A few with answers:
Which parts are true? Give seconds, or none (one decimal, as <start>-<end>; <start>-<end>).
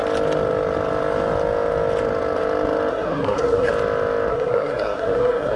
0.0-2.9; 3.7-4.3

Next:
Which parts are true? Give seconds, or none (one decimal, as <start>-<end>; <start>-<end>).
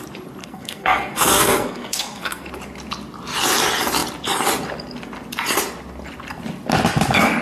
0.0-0.4; 2.5-7.4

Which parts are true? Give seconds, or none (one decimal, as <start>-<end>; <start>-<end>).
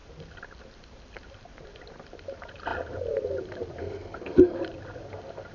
0.0-3.8; 4.6-5.5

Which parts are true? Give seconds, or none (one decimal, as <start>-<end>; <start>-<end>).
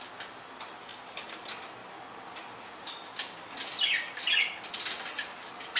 0.0-5.8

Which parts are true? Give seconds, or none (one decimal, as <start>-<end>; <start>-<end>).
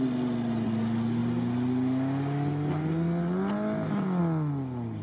0.0-5.0